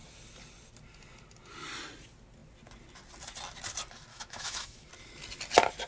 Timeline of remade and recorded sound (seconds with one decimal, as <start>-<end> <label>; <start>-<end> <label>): 0.0-4.1 recorded; 4.1-4.9 remade; 4.9-5.9 recorded